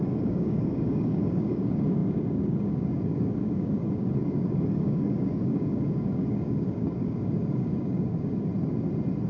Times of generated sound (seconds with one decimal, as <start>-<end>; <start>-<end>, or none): 0.0-8.5